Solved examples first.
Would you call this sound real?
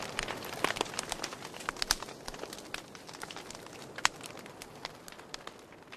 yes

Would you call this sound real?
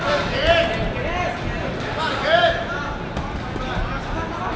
yes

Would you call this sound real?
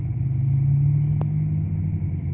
yes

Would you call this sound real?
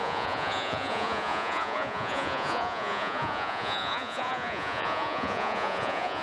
no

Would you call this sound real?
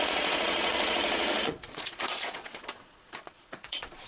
no